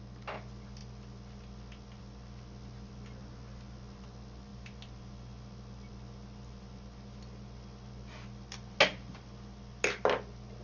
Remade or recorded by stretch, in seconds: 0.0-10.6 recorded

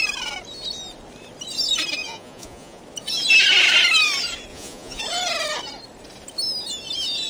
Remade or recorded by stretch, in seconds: 0.0-2.0 recorded; 2.0-2.8 remade; 2.8-4.5 recorded; 4.5-5.0 remade; 5.0-7.3 recorded